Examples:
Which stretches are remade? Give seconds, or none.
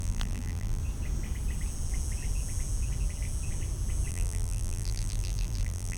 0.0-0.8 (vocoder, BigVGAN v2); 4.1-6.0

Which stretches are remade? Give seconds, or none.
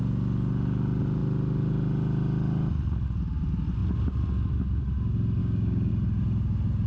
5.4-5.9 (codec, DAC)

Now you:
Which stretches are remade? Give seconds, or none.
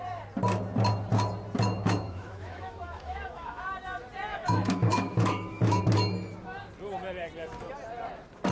1.8-3.6 (autoencoder, DAC-VAE); 4.3-5.8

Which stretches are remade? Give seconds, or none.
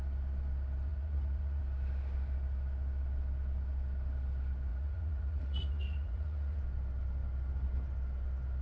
0.9-1.6 (vocoder, Vocos); 4.7-6.6